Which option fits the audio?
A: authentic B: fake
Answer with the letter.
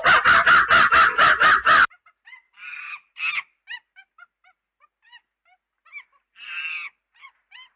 A